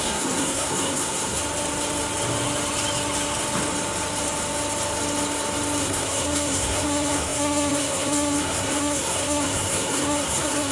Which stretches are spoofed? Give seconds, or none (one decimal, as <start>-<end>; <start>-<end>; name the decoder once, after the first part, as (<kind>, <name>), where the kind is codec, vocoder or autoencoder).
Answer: 0.0-1.4 (codec, SNAC); 5.8-10.7